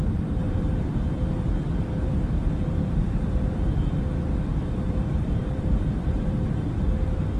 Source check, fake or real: fake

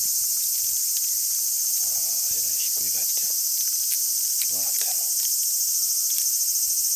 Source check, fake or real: fake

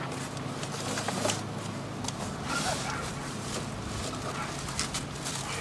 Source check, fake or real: real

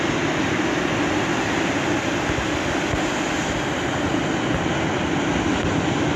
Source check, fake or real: real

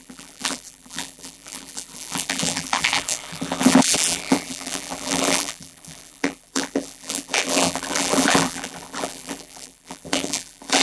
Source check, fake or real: fake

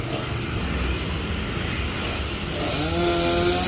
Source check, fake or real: real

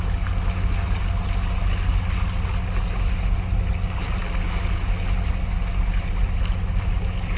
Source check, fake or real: real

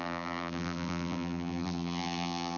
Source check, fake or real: fake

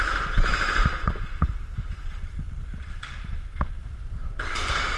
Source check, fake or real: real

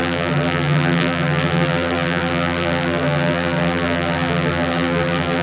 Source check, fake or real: fake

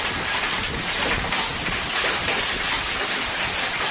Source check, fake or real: fake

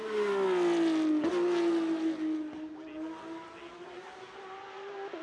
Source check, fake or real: real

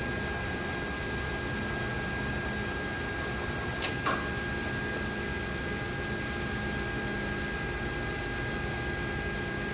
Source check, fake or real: real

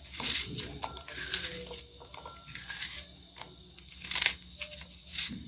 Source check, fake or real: real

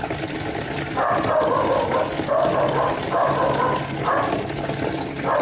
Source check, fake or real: fake